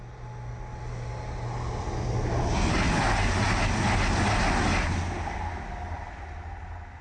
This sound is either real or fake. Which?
real